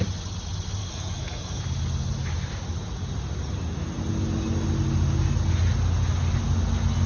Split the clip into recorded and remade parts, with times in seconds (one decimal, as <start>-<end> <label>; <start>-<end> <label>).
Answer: 0.0-0.8 recorded; 0.8-1.6 remade; 1.6-7.1 recorded